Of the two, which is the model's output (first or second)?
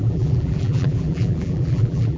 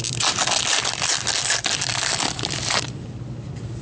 first